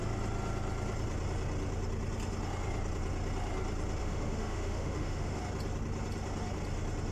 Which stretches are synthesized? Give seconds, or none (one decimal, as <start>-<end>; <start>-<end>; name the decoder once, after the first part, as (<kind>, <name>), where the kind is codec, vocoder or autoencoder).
4.0-5.4 (autoencoder, DAC-VAE)